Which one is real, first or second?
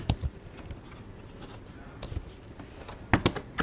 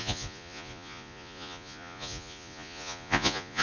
first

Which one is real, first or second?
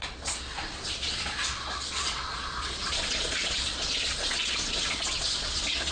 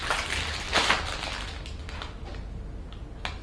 second